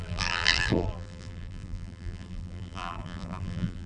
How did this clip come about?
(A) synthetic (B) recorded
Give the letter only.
A